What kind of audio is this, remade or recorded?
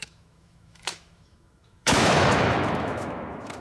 remade